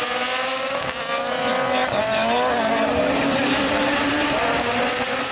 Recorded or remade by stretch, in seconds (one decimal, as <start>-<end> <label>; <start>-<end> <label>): 0.0-0.5 recorded; 0.5-1.0 remade; 1.0-5.3 recorded